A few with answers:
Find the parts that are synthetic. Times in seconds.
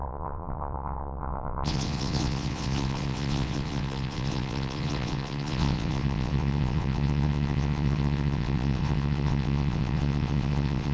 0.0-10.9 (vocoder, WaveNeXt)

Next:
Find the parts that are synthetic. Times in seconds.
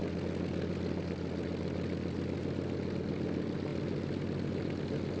none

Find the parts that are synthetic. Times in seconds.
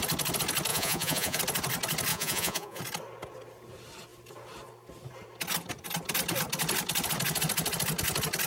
0.7-1.4 (vocoder, Vocos); 2.1-2.8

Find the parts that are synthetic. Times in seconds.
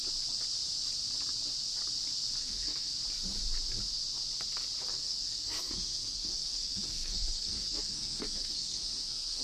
2.4-2.9 (codec, SNAC); 4.9-9.4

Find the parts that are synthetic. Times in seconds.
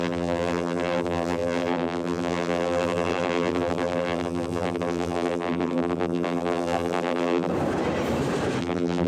0.0-7.5 (vocoder, BigVGAN v2); 8.6-9.1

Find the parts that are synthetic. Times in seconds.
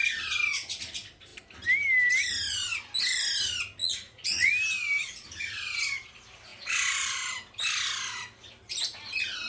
3.8-4.5 (vocoder, Vocos); 6.5-7.3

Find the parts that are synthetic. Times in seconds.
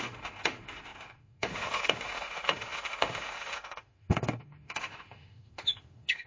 0.0-6.3 (autoencoder, DAC-VAE)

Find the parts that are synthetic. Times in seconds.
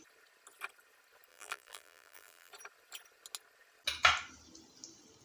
1.3-2.5 (vocoder, BigVGAN v2)